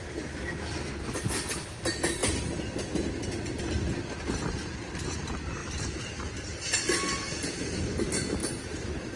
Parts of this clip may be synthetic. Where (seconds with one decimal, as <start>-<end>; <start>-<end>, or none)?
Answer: 5.6-6.3